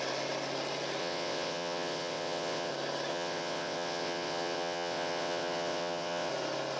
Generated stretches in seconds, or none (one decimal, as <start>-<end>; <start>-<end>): 1.0-2.7; 3.1-6.3